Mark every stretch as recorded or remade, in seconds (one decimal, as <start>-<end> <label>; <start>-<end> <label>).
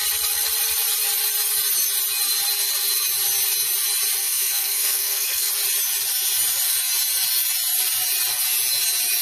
0.0-4.2 recorded; 4.2-5.5 remade; 5.5-9.2 recorded